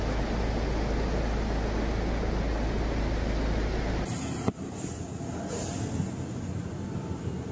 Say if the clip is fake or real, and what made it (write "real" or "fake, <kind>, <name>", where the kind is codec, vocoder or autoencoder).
real